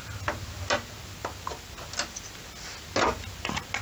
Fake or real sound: real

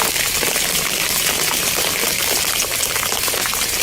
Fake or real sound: real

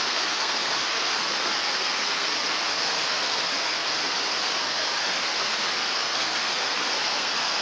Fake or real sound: fake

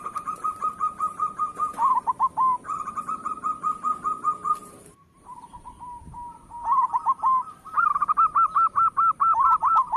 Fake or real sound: fake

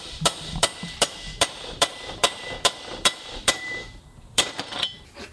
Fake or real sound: fake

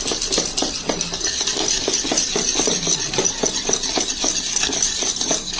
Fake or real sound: real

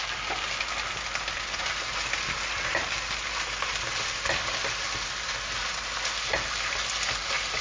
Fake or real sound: real